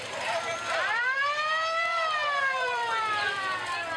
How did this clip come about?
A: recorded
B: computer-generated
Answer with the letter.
B